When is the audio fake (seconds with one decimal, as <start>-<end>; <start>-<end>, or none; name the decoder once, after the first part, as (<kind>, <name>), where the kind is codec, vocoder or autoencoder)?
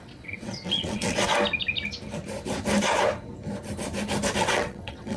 0.0-1.3 (vocoder, WaveNeXt); 4.4-5.2